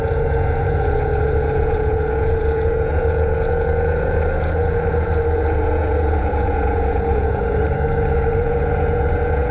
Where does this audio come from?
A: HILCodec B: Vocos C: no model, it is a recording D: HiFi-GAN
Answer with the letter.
B